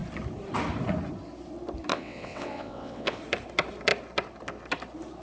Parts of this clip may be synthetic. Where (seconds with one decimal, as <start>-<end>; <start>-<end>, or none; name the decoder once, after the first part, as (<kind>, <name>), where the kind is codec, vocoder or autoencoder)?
1.9-3.2 (vocoder, WaveNeXt)